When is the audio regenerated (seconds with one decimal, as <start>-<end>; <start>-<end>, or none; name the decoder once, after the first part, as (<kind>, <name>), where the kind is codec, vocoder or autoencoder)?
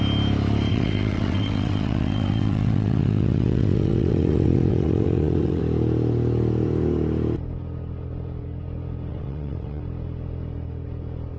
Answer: 0.7-5.6 (vocoder, WaveNeXt); 9.1-9.8